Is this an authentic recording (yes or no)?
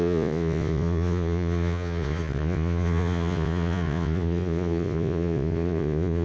no